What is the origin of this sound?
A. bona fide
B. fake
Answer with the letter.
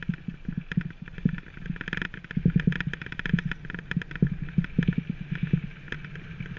A